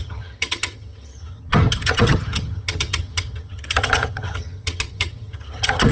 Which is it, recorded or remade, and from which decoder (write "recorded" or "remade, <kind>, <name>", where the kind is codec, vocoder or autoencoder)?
remade, vocoder, HiFi-GAN